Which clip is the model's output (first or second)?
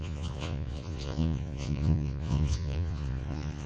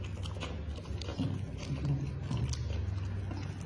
first